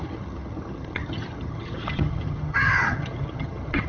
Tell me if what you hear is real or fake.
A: fake